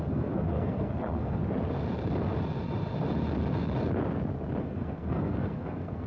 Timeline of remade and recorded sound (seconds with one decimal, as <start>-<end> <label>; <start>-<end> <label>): 0.0-1.4 remade; 1.4-4.6 recorded; 4.6-6.1 remade